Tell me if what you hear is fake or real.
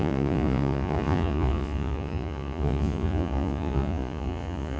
fake